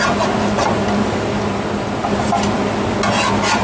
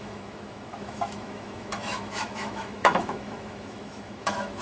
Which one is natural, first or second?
first